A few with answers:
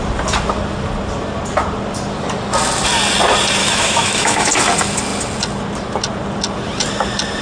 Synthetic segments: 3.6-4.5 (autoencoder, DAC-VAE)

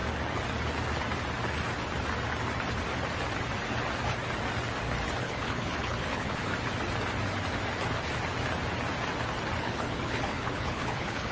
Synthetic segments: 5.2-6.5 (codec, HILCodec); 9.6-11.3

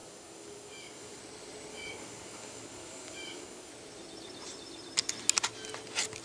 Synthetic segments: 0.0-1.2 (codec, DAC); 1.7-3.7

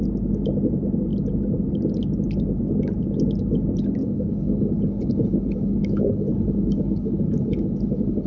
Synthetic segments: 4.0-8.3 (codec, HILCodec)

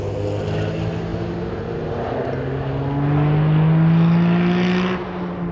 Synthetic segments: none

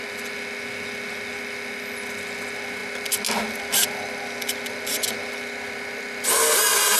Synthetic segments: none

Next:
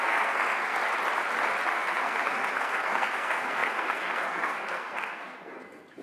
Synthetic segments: 0.0-0.8 (codec, SNAC); 1.7-6.0